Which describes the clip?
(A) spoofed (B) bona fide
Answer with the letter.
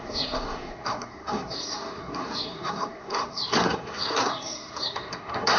A